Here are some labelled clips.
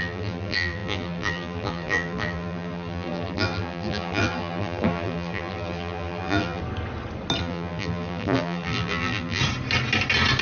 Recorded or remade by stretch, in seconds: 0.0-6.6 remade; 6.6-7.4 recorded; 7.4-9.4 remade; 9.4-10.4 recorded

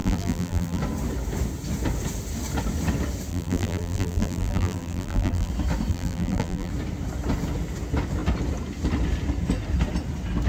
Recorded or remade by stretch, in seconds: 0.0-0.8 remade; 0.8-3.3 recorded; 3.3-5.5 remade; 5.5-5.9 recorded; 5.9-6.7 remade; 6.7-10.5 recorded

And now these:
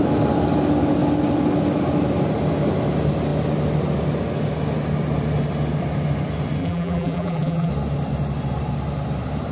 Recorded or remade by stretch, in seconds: 0.0-6.6 recorded; 6.6-7.7 remade; 7.7-9.5 recorded

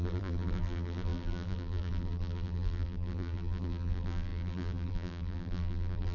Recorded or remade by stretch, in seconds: 0.0-6.1 remade

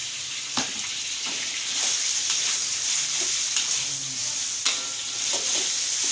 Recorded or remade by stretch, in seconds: 0.0-3.7 remade; 3.7-4.2 recorded; 4.2-4.7 remade; 4.7-6.1 recorded

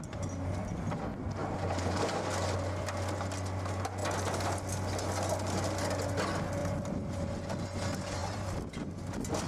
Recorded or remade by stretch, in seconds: 0.0-6.6 recorded; 6.6-7.3 remade; 7.3-8.2 recorded; 8.2-8.9 remade; 8.9-9.5 recorded

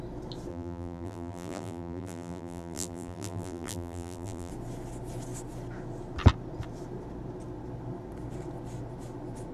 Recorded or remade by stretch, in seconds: 0.0-0.5 recorded; 0.5-4.5 remade; 4.5-9.5 recorded

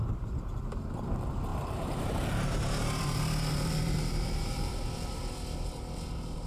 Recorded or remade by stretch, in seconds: 0.0-1.5 recorded; 1.5-5.4 remade; 5.4-6.5 recorded